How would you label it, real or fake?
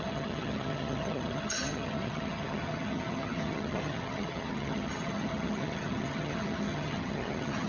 fake